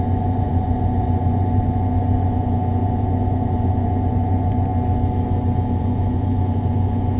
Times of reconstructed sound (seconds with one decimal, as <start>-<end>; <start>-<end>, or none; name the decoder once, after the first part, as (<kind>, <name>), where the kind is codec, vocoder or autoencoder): 0.0-4.7 (vocoder, Vocos); 5.8-7.2